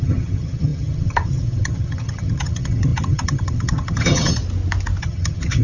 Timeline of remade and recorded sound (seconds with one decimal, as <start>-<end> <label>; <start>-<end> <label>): 0.0-4.4 remade; 4.4-5.0 recorded; 5.0-5.6 remade